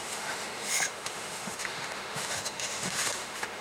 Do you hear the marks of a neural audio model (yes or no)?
yes